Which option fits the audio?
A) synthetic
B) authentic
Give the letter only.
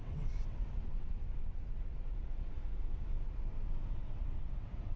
A